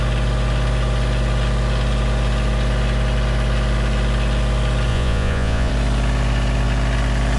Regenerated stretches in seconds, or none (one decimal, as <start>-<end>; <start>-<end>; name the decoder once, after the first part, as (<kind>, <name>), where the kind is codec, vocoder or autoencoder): 4.9-5.7 (vocoder, Vocos)